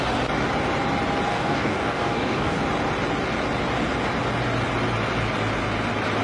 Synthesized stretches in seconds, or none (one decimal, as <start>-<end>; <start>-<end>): 1.3-2.6